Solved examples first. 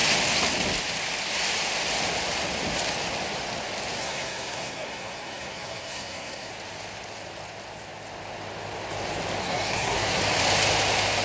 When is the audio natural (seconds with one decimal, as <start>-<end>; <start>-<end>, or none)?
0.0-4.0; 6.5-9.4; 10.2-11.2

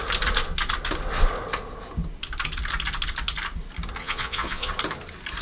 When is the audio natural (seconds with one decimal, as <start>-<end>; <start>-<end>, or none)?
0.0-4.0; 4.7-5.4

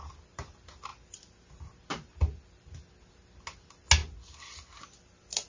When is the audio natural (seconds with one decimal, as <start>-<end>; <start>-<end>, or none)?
0.0-5.5

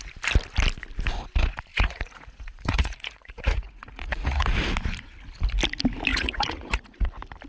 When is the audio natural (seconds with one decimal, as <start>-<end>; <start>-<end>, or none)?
0.0-1.7; 4.5-6.1; 7.1-7.5

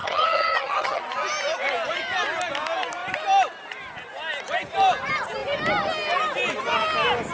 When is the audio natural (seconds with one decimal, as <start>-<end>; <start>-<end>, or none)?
1.0-7.3